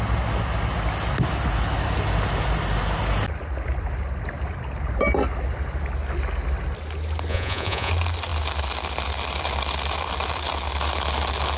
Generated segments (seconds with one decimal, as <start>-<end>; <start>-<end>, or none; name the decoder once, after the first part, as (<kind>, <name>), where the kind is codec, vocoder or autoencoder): 7.3-7.9 (vocoder, Vocos)